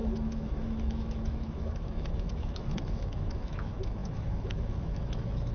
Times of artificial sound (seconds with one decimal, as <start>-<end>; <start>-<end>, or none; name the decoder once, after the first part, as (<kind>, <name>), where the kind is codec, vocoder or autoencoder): 0.0-5.5 (autoencoder, DAC-VAE)